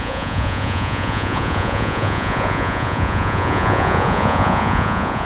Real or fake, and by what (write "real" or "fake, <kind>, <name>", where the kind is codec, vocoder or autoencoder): fake, vocoder, Vocos